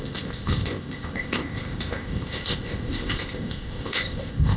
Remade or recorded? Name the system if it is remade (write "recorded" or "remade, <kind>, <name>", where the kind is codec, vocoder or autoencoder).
remade, codec, ZipCodec